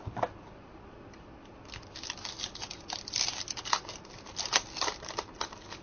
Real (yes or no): yes